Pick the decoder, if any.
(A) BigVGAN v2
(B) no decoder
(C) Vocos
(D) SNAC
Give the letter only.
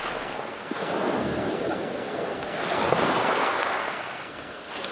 D